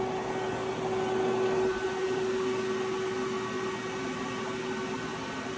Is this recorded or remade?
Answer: recorded